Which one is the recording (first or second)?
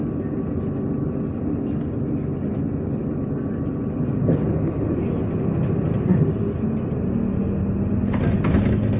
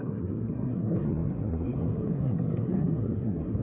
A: first